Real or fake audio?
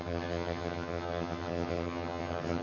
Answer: fake